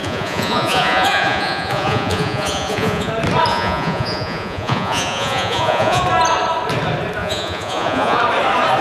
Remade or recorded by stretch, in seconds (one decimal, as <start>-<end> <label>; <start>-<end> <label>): 0.0-3.1 remade; 3.1-3.5 recorded; 3.5-6.0 remade; 6.0-7.2 recorded; 7.2-8.2 remade; 8.2-8.8 recorded

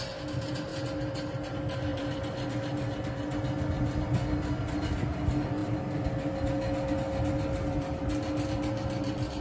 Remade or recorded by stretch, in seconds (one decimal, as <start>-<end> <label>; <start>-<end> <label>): 0.0-1.9 recorded; 1.9-2.5 remade; 2.5-9.4 recorded

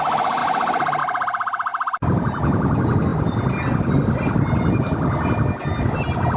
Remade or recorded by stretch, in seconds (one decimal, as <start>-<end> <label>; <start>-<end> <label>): 0.0-6.4 recorded